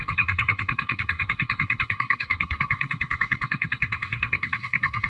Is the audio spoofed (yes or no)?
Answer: yes